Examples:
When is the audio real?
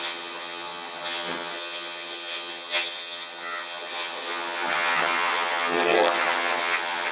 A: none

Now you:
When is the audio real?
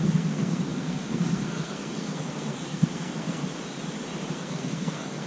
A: 3.4-4.3